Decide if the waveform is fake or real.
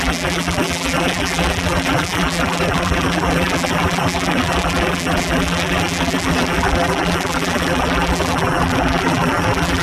fake